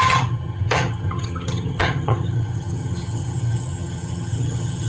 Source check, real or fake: fake